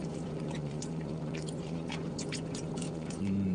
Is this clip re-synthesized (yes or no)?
yes